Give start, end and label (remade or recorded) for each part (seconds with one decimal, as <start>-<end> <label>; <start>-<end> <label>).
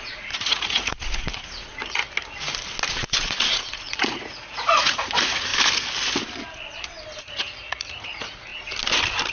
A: 0.0-2.0 remade; 2.0-2.9 recorded; 2.9-5.5 remade; 5.5-7.2 recorded; 7.2-8.5 remade; 8.5-9.3 recorded